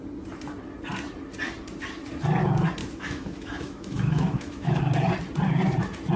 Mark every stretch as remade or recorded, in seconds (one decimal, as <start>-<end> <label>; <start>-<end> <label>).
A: 0.0-2.8 recorded; 2.8-4.8 remade; 4.8-6.2 recorded